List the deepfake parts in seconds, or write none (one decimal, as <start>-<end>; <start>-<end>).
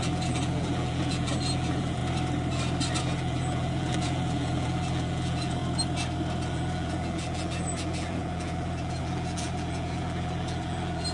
0.0-2.0; 3.0-5.6; 6.5-11.1